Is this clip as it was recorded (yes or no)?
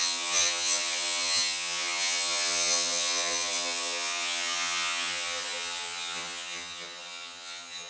no